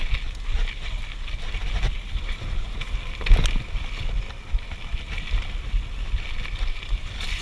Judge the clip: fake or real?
real